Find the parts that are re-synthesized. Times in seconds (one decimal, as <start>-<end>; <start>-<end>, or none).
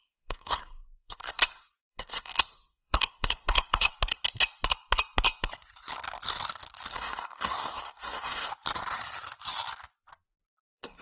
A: 0.0-3.9; 6.9-8.5; 10.6-11.0